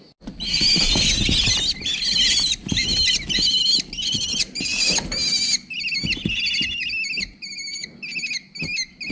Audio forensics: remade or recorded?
recorded